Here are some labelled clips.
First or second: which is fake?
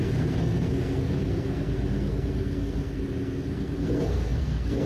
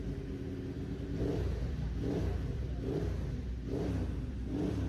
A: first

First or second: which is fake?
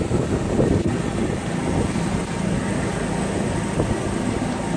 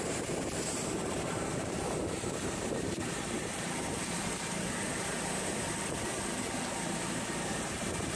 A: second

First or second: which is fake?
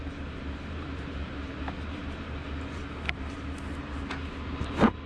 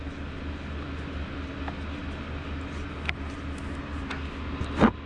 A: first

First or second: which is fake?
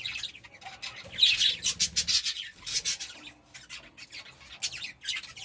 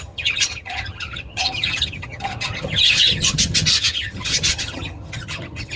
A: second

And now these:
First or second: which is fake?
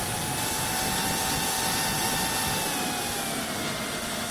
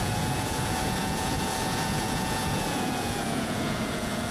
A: second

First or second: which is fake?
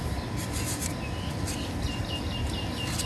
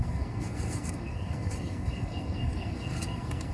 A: second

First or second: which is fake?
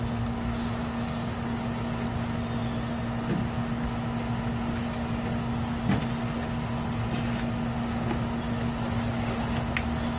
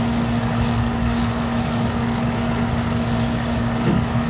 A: second